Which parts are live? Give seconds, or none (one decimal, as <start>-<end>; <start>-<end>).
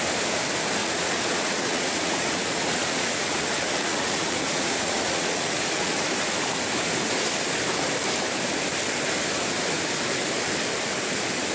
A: 0.0-0.8; 6.0-11.5